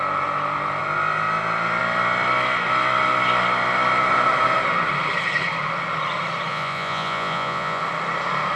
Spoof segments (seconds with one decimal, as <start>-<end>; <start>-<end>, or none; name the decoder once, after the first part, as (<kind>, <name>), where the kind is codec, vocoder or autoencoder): 6.5-7.8 (vocoder, Vocos)